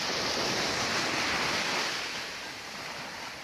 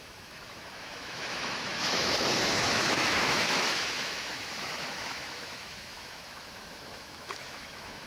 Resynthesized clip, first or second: second